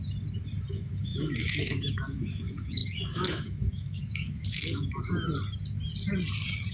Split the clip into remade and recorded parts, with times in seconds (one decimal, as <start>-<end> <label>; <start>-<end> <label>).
0.0-0.7 recorded; 0.7-5.1 remade; 5.1-6.7 recorded